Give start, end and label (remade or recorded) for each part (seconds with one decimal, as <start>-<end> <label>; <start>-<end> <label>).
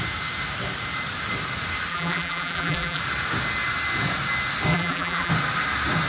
0.0-1.9 recorded; 1.9-3.0 remade; 3.0-4.7 recorded; 4.7-5.3 remade; 5.3-6.1 recorded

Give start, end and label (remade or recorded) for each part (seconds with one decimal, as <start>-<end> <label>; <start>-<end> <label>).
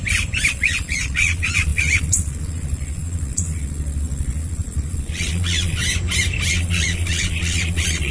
0.0-0.5 recorded; 0.5-5.8 remade; 5.8-6.5 recorded; 6.5-8.1 remade